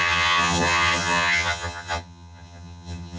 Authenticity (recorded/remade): remade